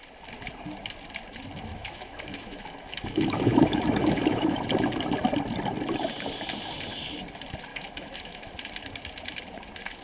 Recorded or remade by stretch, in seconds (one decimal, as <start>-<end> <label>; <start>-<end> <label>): 0.0-1.7 recorded; 1.7-4.6 remade; 4.6-7.7 recorded; 7.7-8.5 remade; 8.5-10.0 recorded